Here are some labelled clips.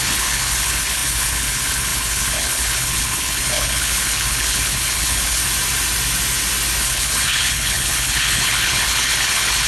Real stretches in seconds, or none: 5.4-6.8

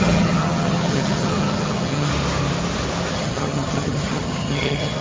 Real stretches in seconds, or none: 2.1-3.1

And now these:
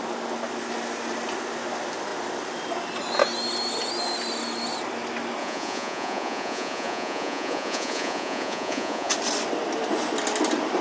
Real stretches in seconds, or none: 0.0-5.4; 9.1-10.8

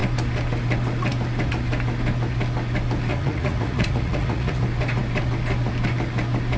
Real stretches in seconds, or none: 0.0-3.1; 4.6-6.6